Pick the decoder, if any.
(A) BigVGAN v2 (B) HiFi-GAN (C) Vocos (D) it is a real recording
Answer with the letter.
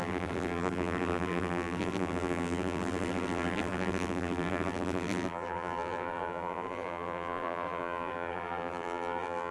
A